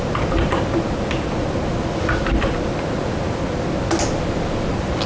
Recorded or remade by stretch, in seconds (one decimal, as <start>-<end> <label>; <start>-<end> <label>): 0.0-5.1 recorded